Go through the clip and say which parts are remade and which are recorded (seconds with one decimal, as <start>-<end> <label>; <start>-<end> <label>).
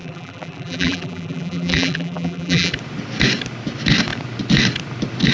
0.0-2.7 remade; 2.7-5.3 recorded